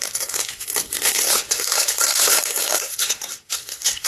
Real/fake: fake